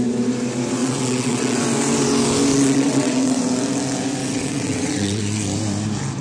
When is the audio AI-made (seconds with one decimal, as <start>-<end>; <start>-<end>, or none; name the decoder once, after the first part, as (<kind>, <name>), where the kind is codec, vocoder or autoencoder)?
0.8-1.6 (vocoder, WaveNeXt); 2.5-3.4; 4.2-5.2